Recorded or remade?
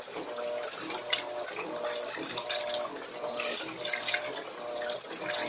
recorded